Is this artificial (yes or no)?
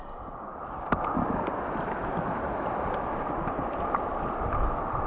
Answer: no